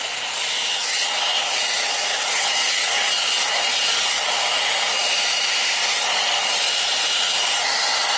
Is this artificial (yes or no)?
no